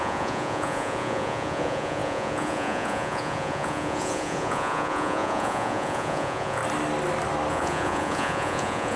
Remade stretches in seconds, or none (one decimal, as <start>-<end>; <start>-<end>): 0.0-6.6; 7.5-9.0